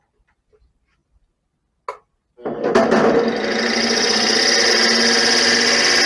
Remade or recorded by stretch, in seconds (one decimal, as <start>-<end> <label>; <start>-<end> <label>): 0.0-6.1 recorded

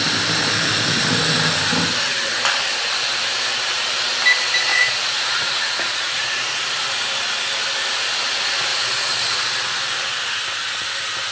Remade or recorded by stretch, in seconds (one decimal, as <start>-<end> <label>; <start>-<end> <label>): 0.0-4.7 recorded; 4.7-6.7 remade; 6.7-8.7 recorded; 8.7-9.4 remade; 9.4-11.3 recorded

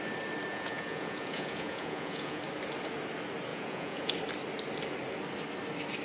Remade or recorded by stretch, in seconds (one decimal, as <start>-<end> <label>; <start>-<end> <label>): 0.0-0.5 recorded; 0.5-2.4 remade; 2.4-3.5 recorded; 3.5-4.1 remade; 4.1-6.0 recorded

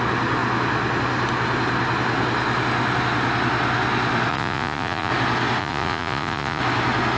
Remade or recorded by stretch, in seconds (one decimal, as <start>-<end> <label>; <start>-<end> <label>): 0.0-4.3 recorded; 4.3-5.1 remade; 5.1-5.6 recorded; 5.6-6.6 remade; 6.6-7.2 recorded

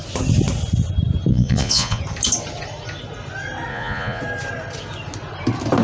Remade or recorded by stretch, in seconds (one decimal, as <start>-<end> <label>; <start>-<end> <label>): 0.0-1.3 recorded; 1.3-2.0 remade; 2.0-3.7 recorded; 3.7-4.2 remade; 4.2-5.8 recorded

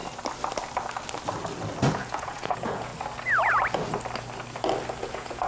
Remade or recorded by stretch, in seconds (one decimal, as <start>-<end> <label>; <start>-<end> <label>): 0.0-1.9 recorded; 1.9-2.9 remade; 2.9-5.0 recorded; 5.0-5.5 remade

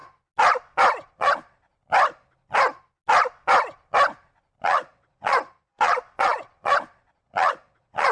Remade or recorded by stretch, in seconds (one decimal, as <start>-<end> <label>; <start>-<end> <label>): 0.0-1.1 recorded; 1.1-1.7 remade; 1.7-4.6 recorded; 4.6-8.1 remade

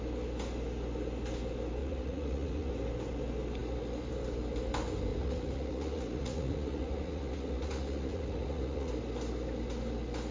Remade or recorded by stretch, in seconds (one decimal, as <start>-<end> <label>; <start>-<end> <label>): 0.0-1.8 recorded; 1.8-2.7 remade; 2.7-5.1 recorded; 5.1-8.9 remade; 8.9-10.3 recorded